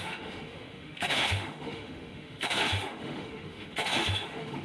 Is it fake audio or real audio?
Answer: fake